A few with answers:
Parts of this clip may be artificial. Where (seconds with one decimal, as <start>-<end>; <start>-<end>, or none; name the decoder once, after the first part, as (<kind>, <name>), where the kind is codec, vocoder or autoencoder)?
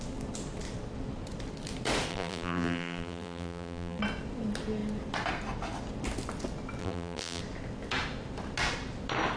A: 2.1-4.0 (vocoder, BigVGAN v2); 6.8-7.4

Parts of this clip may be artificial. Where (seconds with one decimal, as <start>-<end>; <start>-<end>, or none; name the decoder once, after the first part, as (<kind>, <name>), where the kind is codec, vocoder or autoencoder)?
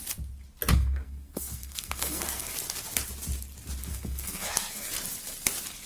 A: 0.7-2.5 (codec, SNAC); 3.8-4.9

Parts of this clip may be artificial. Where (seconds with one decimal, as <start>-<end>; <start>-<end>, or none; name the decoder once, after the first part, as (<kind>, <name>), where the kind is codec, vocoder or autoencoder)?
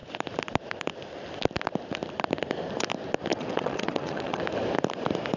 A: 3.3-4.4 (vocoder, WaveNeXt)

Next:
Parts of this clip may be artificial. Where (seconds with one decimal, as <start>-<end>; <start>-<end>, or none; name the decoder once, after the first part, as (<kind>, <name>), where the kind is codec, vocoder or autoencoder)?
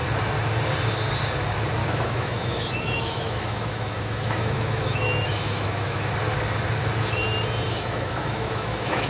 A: 1.8-6.1 (autoencoder, DAC-VAE); 7.7-9.1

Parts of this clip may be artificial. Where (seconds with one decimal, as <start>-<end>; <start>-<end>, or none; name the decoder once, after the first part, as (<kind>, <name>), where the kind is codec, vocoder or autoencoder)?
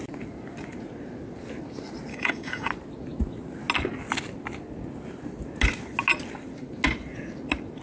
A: 2.1-2.7 (codec, DAC)